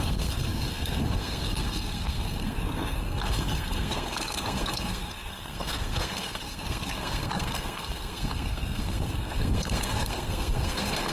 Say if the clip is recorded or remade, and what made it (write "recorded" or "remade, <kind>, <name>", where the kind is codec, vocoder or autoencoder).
remade, codec, SNAC